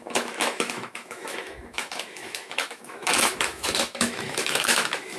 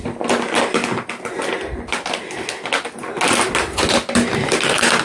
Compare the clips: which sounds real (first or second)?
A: second